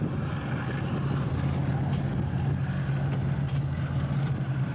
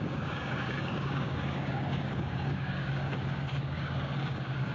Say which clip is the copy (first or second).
second